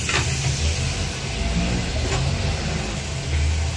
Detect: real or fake real